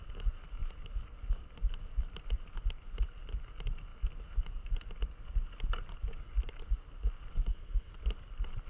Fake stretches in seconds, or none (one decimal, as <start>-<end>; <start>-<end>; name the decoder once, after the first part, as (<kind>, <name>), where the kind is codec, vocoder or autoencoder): 7.5-8.0 (codec, SNAC)